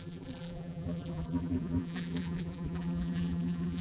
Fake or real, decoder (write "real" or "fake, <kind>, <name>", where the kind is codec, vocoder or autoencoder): fake, vocoder, BigVGAN v2